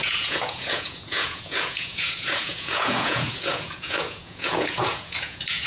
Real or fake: fake